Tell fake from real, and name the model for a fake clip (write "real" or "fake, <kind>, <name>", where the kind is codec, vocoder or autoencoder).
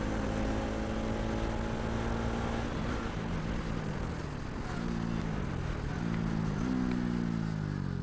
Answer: real